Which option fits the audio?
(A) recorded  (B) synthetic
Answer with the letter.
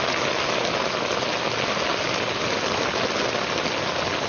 A